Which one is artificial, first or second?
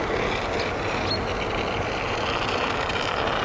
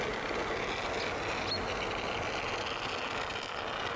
first